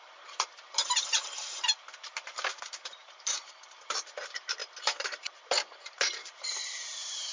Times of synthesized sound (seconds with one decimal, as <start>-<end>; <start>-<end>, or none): 0.0-7.3